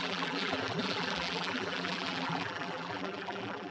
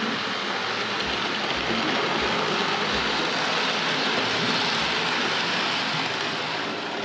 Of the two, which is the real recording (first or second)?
second